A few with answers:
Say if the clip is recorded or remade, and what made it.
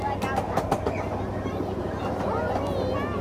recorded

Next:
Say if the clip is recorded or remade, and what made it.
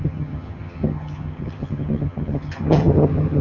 remade, vocoder, HiFi-GAN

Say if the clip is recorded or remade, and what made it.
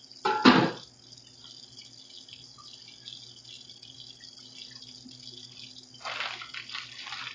recorded